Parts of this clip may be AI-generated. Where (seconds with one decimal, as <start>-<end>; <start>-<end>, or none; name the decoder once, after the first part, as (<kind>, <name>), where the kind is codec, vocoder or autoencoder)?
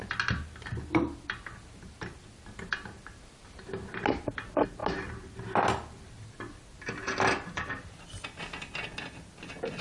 none